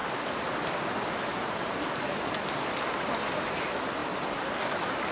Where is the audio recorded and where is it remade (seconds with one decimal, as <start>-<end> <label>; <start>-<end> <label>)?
0.0-5.1 recorded